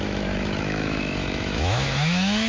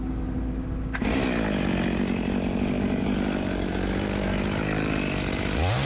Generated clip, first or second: first